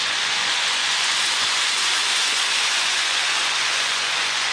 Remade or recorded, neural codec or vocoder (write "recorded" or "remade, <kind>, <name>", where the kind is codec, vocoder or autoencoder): remade, vocoder, Vocos